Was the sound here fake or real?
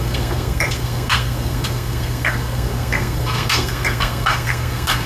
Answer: fake